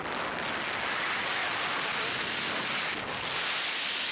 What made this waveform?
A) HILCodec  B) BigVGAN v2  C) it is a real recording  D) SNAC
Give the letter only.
C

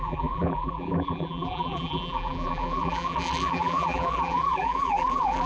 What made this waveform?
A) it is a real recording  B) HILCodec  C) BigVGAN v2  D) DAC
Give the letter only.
C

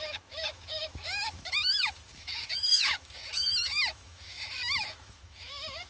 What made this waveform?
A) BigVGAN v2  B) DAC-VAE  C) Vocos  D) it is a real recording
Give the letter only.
B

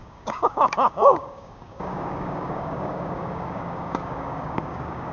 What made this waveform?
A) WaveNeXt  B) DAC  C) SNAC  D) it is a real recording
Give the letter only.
B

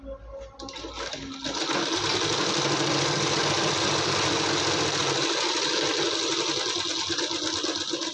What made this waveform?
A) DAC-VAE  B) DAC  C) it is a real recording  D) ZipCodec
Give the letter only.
C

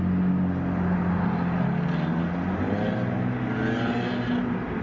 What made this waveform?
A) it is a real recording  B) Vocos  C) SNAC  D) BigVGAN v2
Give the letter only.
A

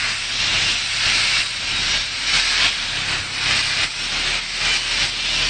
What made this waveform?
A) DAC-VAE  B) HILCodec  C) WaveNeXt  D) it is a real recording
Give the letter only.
D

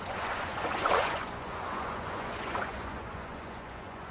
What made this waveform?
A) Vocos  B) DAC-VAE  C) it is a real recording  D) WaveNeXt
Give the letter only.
A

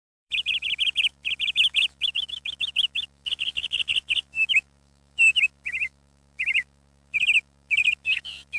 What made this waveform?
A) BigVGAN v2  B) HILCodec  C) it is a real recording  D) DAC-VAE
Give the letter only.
D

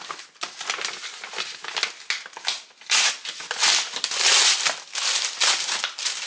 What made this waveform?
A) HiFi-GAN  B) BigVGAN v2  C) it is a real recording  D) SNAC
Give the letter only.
C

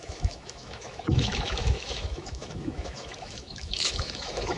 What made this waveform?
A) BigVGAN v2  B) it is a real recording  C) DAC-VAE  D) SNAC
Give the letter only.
C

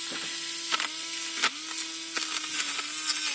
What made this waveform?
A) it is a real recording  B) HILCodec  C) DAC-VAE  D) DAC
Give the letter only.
A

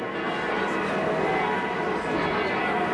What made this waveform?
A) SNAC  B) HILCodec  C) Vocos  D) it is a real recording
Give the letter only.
D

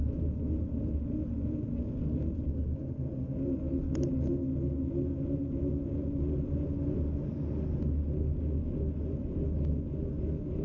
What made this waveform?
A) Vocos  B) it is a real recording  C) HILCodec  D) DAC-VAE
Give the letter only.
B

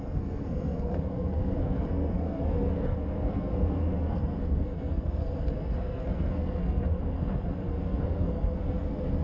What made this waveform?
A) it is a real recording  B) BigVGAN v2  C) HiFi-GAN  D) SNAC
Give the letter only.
D